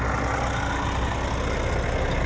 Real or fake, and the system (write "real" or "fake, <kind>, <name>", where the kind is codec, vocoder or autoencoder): real